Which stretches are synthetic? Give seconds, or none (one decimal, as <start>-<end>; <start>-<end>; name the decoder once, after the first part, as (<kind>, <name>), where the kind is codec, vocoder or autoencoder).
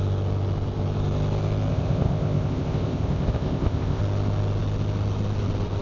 1.7-4.0 (codec, ZipCodec)